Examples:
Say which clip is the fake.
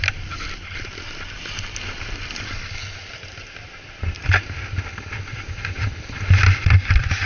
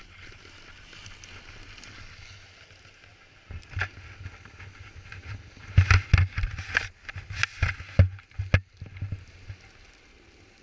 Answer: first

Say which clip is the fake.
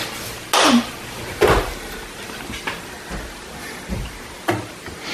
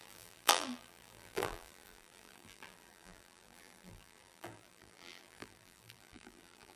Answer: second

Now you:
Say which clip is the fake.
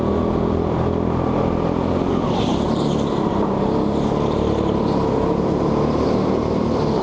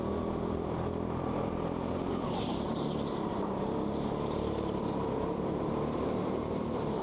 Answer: second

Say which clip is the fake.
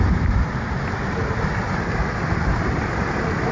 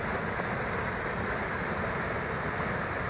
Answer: first